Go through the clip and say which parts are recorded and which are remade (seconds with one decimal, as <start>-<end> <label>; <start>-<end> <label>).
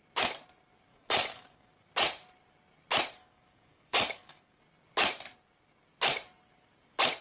0.0-0.9 recorded; 0.9-1.7 remade; 1.7-3.2 recorded; 3.2-4.6 remade; 4.6-7.2 recorded